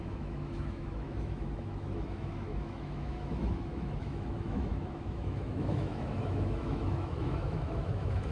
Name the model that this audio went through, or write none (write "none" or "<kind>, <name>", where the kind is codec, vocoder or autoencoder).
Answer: autoencoder, DAC-VAE